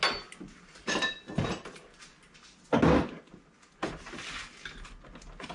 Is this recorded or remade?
recorded